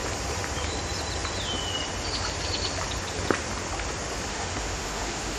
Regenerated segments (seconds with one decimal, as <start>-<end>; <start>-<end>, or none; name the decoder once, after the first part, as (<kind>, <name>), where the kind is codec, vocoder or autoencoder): 4.3-5.4 (autoencoder, DAC-VAE)